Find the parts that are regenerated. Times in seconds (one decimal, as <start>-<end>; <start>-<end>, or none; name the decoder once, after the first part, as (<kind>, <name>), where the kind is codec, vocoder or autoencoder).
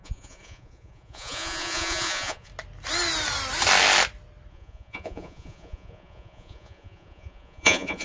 0.0-2.5 (vocoder, Vocos); 4.5-8.0